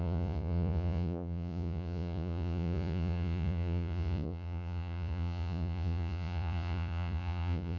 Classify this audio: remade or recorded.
remade